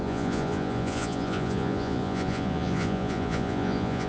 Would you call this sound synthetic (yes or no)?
yes